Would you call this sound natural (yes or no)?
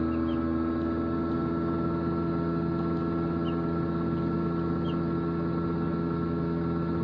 yes